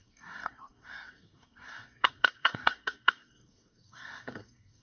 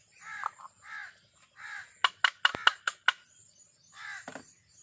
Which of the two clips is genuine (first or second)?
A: second